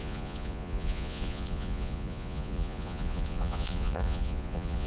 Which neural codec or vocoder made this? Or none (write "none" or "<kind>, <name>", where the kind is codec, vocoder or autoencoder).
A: vocoder, Vocos